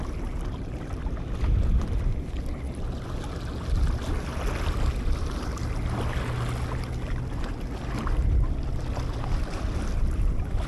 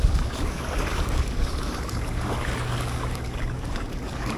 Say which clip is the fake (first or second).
second